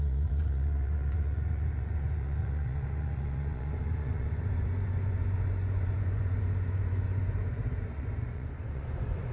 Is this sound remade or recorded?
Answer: remade